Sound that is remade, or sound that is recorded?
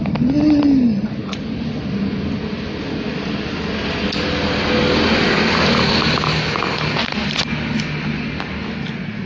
recorded